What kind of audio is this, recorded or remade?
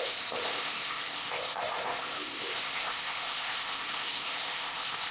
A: remade